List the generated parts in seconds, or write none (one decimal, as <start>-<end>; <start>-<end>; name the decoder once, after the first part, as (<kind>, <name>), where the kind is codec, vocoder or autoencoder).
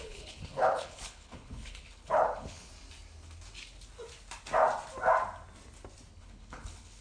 0.0-2.7 (codec, HILCodec); 6.1-7.0